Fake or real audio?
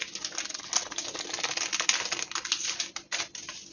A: real